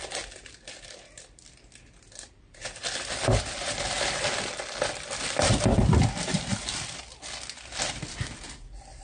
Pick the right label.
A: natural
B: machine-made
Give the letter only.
A